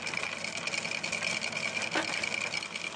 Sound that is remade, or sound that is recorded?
recorded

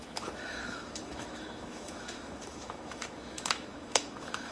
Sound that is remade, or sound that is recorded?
remade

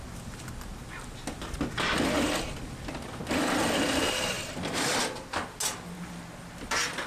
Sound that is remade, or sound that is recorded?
recorded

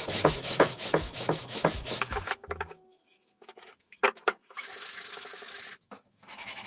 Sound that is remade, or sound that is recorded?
remade